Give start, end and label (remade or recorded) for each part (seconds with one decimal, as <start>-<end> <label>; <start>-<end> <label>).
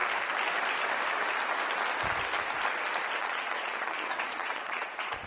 0.0-3.2 recorded; 3.2-5.3 remade